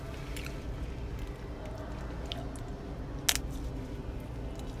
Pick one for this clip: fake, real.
real